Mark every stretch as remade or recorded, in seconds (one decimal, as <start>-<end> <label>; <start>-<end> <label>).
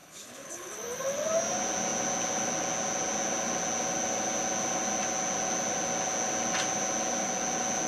0.0-0.7 remade; 0.7-7.9 recorded